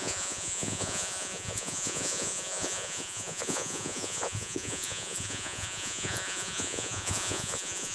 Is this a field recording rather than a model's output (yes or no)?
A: no